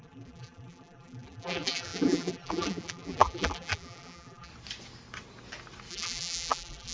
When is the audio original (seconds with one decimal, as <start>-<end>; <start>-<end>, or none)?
4.5-5.9